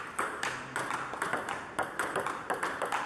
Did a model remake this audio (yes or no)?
yes